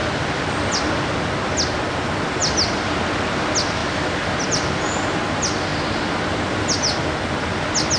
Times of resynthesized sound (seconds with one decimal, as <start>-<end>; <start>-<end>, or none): 0.0-1.3; 2.4-3.0; 3.8-5.2